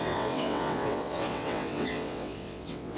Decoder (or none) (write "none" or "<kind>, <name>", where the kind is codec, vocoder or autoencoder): vocoder, WaveNeXt